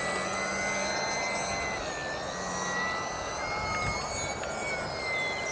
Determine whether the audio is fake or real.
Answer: real